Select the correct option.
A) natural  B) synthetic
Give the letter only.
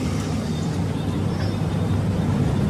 A